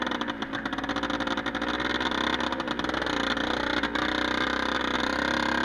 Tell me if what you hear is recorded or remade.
recorded